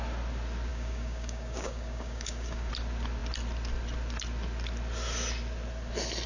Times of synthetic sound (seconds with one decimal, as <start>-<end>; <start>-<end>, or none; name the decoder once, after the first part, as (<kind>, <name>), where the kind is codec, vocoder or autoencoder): 0.7-2.7 (codec, DAC)